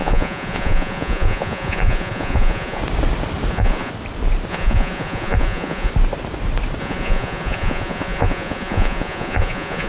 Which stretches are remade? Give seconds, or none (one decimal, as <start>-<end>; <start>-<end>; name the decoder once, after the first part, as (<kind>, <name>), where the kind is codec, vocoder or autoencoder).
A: 0.0-2.8 (vocoder, Vocos); 3.5-3.9; 4.5-5.9; 6.8-9.9